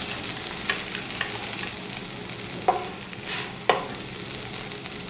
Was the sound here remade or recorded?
recorded